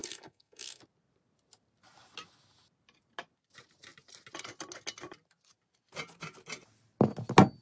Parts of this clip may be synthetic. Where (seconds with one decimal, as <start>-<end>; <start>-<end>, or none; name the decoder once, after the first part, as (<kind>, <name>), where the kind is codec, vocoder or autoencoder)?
0.0-0.8 (codec, SNAC)